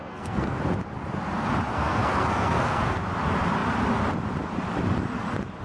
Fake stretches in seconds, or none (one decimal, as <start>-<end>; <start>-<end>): 0.0-0.6; 1.7-3.0

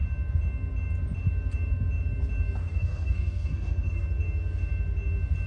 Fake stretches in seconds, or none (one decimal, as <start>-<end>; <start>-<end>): 2.7-4.0

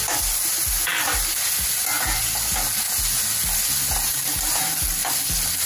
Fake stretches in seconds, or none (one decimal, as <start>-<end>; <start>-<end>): none